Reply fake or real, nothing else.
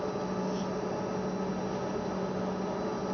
real